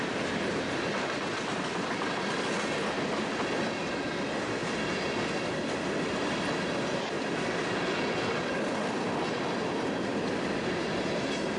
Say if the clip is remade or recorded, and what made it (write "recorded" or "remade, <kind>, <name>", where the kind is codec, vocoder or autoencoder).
recorded